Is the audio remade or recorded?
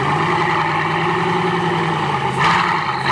recorded